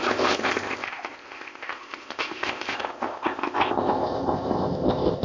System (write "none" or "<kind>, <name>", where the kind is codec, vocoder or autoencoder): codec, ZipCodec